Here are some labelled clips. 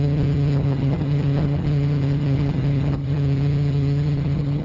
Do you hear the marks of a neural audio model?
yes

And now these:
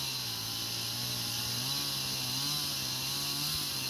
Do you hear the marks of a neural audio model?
no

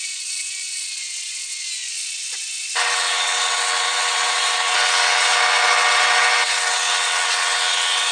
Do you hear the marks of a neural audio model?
yes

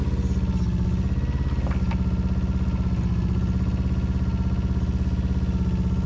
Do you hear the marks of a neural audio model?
no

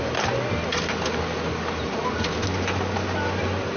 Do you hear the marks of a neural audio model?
no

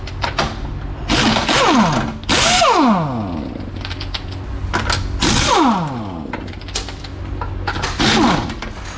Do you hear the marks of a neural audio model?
no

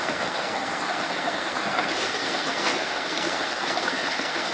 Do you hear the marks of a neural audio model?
yes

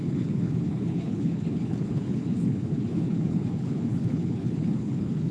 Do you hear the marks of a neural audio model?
yes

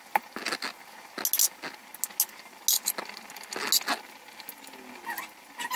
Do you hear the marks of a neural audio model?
no